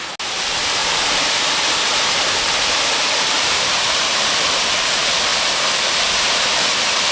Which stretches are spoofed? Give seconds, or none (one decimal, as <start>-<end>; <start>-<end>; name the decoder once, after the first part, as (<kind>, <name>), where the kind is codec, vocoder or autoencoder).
0.8-4.7 (vocoder, BigVGAN v2)